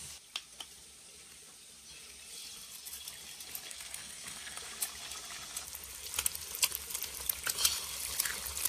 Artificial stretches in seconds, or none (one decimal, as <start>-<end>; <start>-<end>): 3.7-4.6